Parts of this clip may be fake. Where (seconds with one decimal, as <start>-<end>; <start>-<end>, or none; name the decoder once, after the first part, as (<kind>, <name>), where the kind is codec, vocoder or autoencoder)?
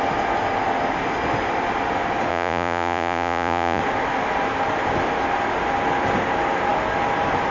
2.3-3.8 (vocoder, Vocos)